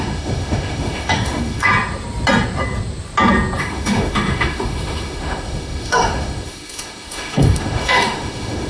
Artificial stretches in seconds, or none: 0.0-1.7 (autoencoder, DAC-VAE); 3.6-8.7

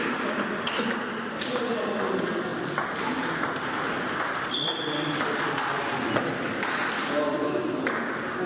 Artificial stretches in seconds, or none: none

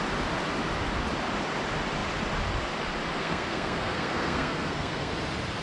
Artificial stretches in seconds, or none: 3.2-5.1 (codec, SNAC)

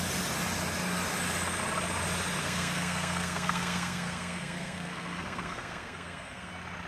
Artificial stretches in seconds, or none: 2.4-6.5 (codec, SNAC)

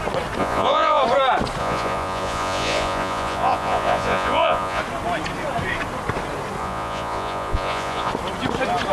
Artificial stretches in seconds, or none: 0.4-1.0 (vocoder, Vocos); 1.6-4.8; 6.6-8.1

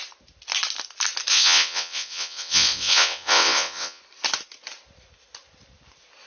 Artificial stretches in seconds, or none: 1.3-4.0 (vocoder, WaveNeXt)

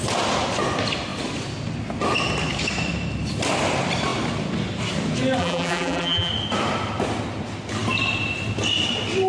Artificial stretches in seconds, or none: 5.4-6.3 (vocoder, BigVGAN v2)